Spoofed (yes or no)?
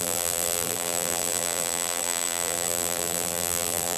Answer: yes